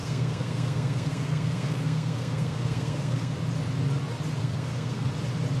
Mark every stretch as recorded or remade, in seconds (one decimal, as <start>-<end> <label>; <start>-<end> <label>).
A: 0.0-3.4 remade; 3.4-4.4 recorded; 4.4-5.1 remade; 5.1-5.6 recorded